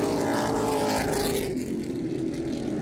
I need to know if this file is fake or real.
real